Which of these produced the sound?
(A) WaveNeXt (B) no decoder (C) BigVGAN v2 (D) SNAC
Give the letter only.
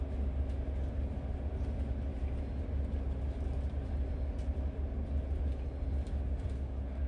B